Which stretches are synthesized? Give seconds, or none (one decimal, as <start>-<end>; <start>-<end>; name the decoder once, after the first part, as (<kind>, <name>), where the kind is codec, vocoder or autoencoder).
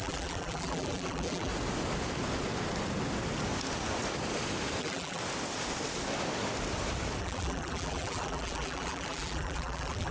0.0-1.5 (vocoder, BigVGAN v2); 4.8-5.2; 7.2-10.1